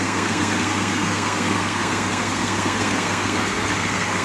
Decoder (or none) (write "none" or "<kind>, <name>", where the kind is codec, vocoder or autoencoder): codec, SNAC